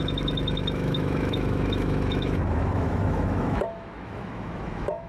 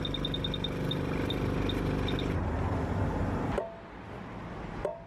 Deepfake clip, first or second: first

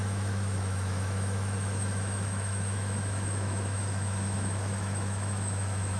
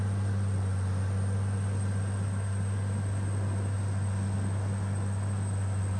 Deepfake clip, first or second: first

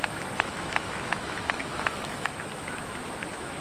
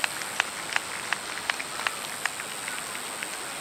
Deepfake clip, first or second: first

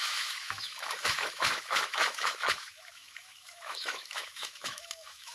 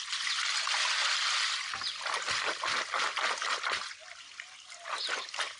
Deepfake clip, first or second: first